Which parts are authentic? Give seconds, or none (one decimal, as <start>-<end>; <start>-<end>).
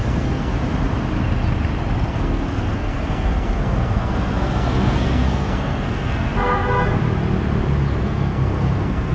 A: 0.5-2.1; 7.0-8.0